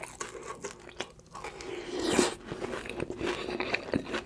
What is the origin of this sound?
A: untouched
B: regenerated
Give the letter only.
A